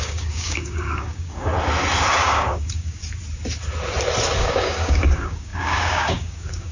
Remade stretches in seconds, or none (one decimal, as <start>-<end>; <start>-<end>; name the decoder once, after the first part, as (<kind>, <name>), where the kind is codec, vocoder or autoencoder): 0.0-1.5 (codec, DAC); 2.2-3.0; 4.4-6.7